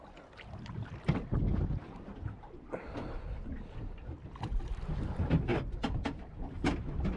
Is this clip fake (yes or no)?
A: no